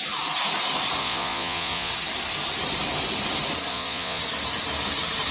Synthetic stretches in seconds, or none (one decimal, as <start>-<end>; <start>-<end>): 1.0-1.9; 3.7-4.2

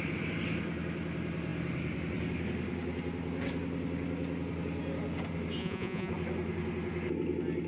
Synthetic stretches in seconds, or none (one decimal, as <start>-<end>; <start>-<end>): 5.6-6.1

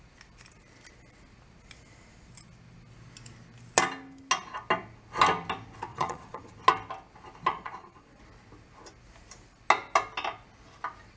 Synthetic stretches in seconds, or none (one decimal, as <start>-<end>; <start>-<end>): 5.9-6.5; 7.5-8.2

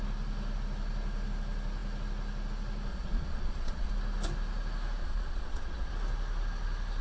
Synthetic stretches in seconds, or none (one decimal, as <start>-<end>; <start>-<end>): 2.9-3.9; 5.0-5.9

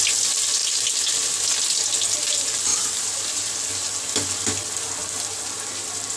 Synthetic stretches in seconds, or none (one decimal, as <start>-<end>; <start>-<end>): none

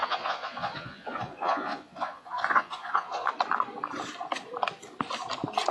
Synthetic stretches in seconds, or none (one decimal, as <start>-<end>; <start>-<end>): 0.0-3.3

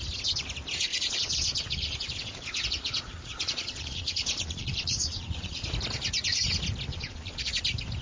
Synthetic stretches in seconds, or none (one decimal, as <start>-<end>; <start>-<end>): 0.9-5.6; 6.9-7.5

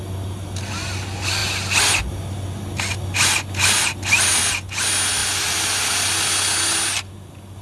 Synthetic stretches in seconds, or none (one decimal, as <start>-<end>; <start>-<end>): none